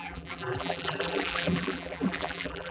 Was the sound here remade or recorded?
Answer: remade